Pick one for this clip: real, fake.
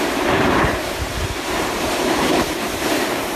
fake